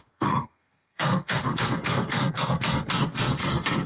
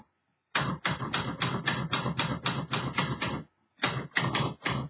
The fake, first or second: first